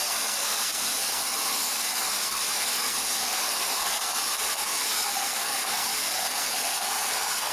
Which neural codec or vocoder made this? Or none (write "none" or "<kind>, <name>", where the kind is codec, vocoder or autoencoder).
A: codec, SNAC